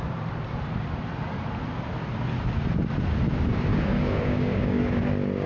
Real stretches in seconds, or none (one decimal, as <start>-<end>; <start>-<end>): 0.0-3.7; 5.0-5.5